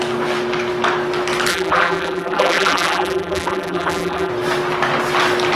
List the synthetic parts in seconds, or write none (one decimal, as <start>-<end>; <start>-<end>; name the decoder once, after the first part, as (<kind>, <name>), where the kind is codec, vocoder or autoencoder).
1.5-4.3 (vocoder, BigVGAN v2)